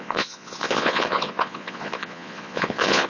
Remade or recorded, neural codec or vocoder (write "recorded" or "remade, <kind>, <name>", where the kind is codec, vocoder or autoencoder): remade, vocoder, Vocos